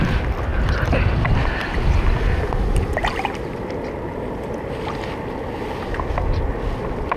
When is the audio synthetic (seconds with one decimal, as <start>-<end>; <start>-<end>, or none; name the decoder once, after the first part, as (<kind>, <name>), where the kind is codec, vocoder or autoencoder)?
none